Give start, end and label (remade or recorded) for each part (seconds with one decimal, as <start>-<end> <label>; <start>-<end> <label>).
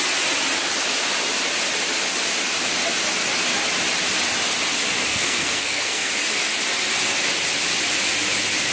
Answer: 0.0-5.1 recorded; 5.1-6.1 remade; 6.1-8.7 recorded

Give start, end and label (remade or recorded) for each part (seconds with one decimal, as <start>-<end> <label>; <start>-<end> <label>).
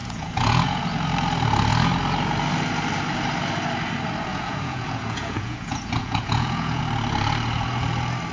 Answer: 0.0-0.8 remade; 0.8-4.3 recorded; 4.3-6.8 remade; 6.8-8.3 recorded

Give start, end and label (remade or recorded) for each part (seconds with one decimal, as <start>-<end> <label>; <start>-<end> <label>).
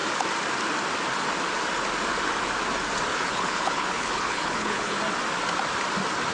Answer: 0.0-3.1 recorded; 3.1-5.0 remade; 5.0-6.3 recorded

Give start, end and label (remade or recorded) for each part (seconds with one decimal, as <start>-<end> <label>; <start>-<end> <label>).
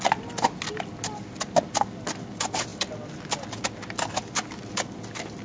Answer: 0.0-5.4 recorded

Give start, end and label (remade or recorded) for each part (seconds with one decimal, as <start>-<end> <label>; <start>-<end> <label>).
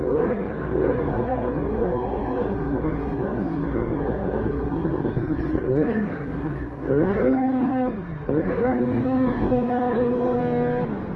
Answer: 0.0-10.4 remade; 10.4-11.2 recorded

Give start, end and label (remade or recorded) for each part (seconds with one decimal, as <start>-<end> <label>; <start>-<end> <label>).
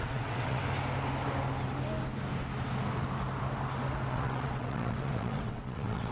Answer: 0.0-0.6 remade; 0.6-4.1 recorded; 4.1-6.1 remade